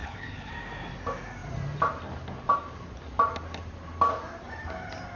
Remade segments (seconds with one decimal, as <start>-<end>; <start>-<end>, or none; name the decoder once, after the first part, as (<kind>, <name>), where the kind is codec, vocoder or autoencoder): 0.0-0.5 (codec, HILCodec)